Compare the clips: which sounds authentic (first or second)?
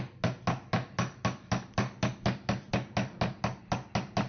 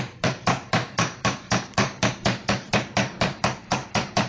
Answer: first